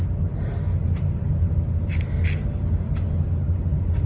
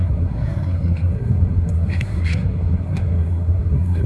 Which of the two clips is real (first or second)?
first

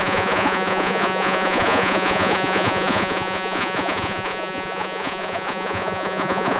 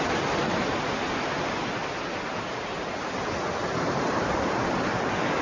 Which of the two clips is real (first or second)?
second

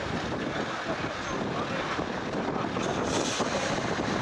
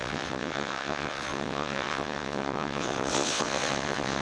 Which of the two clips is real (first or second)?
first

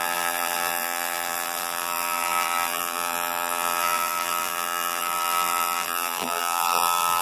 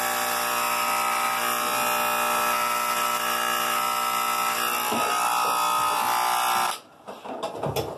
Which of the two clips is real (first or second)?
second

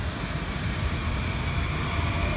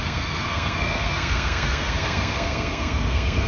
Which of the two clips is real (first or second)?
first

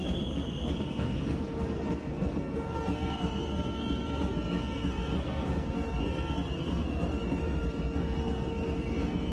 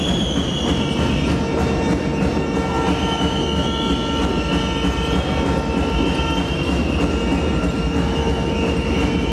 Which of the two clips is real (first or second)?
second